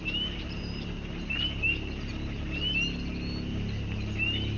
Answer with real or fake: real